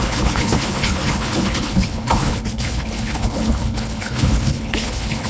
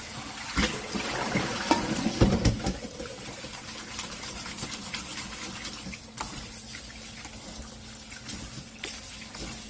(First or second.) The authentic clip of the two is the second